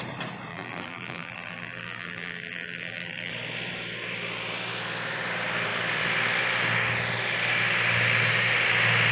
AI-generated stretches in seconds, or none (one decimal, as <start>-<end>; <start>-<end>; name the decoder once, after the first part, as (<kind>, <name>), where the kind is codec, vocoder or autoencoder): 0.5-3.3 (vocoder, BigVGAN v2)